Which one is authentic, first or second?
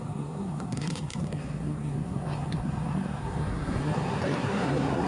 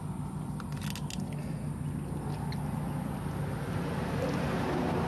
second